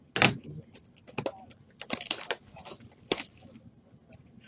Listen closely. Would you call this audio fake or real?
real